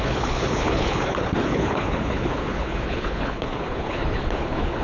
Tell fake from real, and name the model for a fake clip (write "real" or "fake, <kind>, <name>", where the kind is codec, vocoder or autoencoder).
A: fake, codec, HILCodec